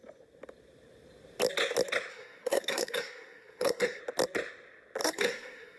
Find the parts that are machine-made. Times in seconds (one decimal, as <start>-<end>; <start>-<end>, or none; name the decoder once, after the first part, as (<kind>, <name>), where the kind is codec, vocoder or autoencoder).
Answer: 2.1-4.0 (codec, SNAC); 5.0-5.8